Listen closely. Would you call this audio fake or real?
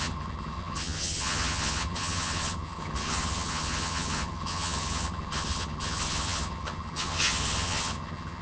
fake